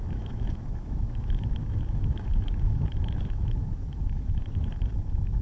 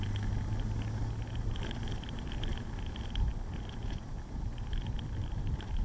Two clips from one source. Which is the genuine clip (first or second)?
second